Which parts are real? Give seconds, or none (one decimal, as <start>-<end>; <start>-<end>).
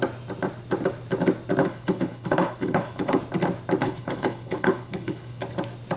0.0-1.6; 3.2-3.8; 5.4-6.0